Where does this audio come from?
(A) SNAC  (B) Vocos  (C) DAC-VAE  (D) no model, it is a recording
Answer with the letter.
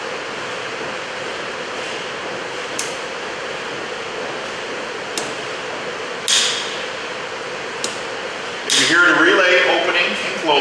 D